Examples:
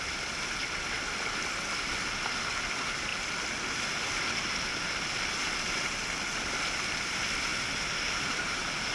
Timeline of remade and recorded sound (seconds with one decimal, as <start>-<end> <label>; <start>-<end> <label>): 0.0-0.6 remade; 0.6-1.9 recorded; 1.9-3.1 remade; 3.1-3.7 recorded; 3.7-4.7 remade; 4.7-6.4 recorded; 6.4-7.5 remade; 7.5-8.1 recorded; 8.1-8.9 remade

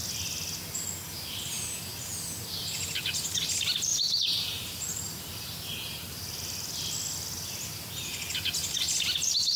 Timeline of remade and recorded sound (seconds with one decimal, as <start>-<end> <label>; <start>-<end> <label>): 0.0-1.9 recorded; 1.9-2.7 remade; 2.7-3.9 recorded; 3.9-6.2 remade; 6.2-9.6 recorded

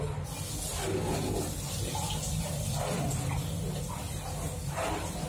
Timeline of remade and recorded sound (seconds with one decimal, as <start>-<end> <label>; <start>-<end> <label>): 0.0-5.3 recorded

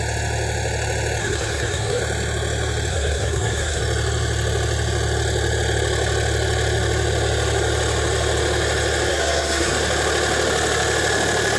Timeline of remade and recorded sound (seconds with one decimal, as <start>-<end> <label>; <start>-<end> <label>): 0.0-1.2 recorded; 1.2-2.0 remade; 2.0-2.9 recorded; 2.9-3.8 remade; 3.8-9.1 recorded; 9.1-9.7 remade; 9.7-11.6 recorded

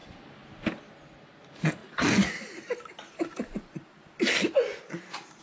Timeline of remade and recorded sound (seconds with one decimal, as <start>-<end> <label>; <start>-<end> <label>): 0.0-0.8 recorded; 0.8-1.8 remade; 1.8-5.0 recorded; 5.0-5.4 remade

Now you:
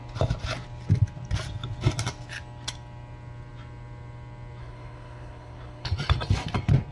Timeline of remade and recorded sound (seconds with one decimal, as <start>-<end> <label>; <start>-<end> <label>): 0.0-4.6 recorded; 4.6-5.9 remade; 5.9-6.9 recorded